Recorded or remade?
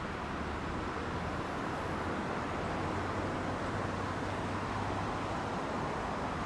recorded